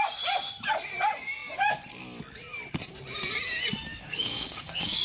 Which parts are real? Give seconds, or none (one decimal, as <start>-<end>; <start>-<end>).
0.0-3.9